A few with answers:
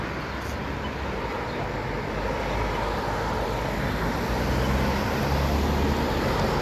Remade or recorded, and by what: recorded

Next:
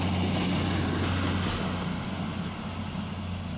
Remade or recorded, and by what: recorded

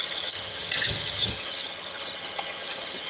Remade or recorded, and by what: remade, vocoder, HiFi-GAN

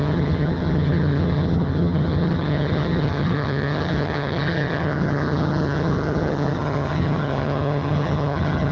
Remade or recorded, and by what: remade, vocoder, HiFi-GAN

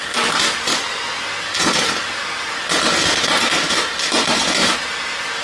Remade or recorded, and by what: recorded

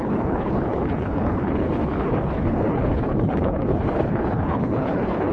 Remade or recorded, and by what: remade, codec, HILCodec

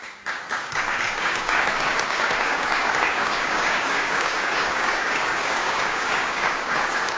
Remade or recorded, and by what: remade, codec, DAC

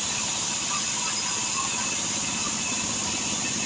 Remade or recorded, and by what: recorded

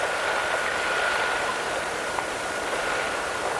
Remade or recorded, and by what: recorded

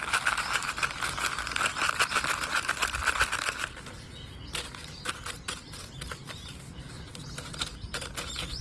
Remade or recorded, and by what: recorded